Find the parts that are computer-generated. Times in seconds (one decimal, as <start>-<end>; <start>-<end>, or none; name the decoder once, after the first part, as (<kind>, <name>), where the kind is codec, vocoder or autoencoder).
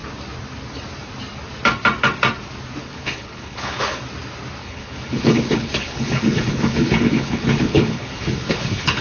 2.8-4.0 (codec, HILCodec); 4.6-9.0